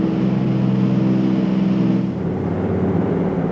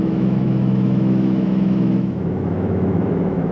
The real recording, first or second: first